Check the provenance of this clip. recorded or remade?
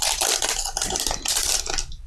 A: recorded